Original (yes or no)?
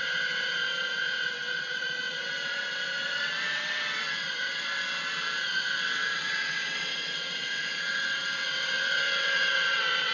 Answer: no